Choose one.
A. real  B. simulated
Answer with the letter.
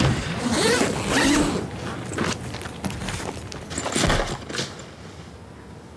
A